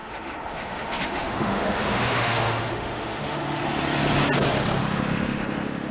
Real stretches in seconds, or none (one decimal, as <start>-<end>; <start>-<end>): 3.6-4.8